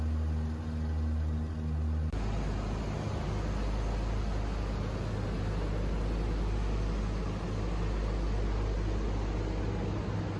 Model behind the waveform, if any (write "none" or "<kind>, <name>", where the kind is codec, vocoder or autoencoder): none